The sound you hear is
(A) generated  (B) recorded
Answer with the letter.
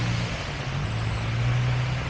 B